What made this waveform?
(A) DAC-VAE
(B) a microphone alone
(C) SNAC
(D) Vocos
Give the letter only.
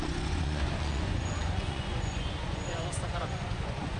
D